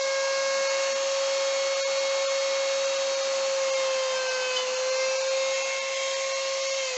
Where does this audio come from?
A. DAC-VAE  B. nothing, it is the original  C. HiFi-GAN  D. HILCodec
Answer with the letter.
B